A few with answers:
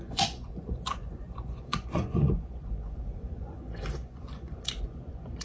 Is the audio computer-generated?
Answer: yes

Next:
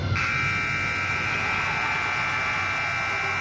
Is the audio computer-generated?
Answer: no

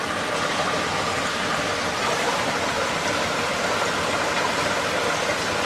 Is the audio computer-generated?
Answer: no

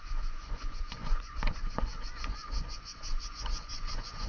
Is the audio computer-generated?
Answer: yes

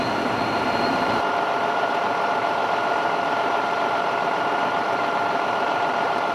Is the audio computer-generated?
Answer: yes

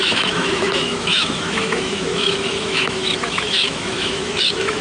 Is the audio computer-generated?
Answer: yes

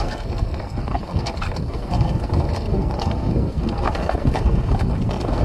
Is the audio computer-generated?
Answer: yes